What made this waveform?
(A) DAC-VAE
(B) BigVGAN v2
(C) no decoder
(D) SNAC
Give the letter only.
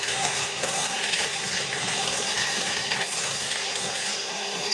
D